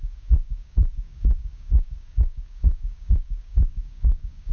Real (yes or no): no